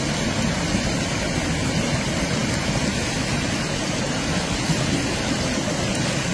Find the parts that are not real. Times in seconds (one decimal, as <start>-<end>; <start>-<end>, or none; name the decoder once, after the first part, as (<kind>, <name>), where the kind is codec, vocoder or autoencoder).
none